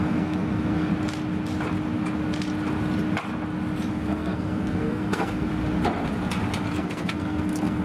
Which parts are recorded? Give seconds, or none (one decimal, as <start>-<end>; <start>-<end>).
0.9-3.9; 5.5-6.7